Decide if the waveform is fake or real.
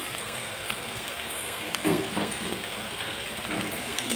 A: fake